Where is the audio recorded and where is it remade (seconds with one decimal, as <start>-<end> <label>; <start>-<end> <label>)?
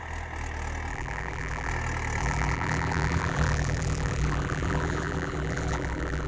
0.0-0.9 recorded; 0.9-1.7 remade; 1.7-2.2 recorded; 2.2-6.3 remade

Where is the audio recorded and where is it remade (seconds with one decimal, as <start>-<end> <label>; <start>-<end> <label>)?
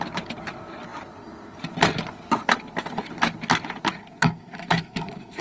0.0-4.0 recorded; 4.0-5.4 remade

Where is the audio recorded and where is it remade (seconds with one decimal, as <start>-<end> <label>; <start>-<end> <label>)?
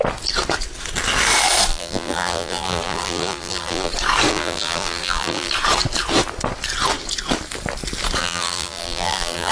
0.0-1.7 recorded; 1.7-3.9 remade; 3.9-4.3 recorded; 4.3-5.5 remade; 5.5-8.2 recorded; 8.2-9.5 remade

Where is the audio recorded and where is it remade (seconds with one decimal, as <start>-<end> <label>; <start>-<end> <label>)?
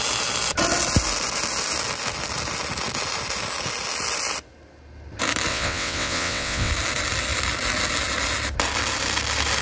0.0-5.5 recorded; 5.5-6.7 remade; 6.7-9.6 recorded